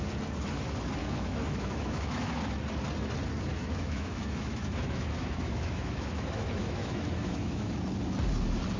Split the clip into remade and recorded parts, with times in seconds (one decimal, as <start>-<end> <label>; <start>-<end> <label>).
0.0-1.0 recorded; 1.0-2.3 remade; 2.3-3.6 recorded; 3.6-7.7 remade; 7.7-8.8 recorded